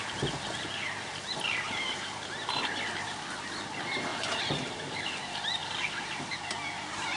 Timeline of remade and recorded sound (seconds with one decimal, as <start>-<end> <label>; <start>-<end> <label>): 0.0-4.1 recorded; 4.1-5.1 remade; 5.1-7.2 recorded